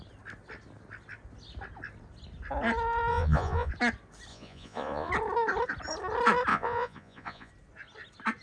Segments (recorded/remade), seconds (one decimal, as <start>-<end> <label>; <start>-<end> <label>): 0.0-3.1 recorded; 3.1-3.7 remade; 3.7-4.3 recorded; 4.3-5.1 remade; 5.1-6.5 recorded; 6.5-7.5 remade; 7.5-8.4 recorded